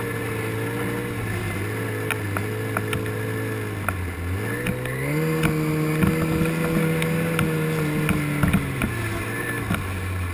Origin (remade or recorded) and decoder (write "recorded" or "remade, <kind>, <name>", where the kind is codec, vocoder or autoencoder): recorded